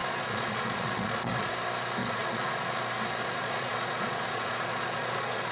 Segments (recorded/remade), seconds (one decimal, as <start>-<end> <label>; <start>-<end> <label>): 0.0-1.5 remade; 1.5-2.0 recorded; 2.0-2.8 remade; 2.8-3.2 recorded; 3.2-5.5 remade